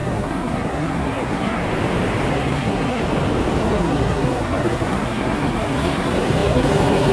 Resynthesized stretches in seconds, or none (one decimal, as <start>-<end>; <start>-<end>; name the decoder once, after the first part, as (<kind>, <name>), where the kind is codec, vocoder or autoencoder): 0.0-1.6 (codec, SNAC); 2.3-3.0; 3.6-7.1